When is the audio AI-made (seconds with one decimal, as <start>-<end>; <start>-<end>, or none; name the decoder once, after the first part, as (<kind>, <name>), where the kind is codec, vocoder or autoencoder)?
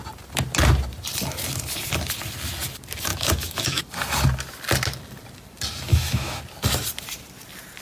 3.1-3.8 (autoencoder, DAC-VAE); 5.9-6.4